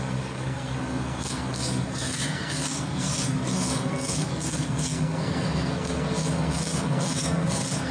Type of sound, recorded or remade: remade